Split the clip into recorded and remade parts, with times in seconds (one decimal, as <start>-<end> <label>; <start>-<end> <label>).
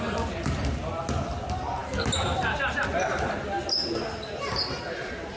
0.0-5.4 recorded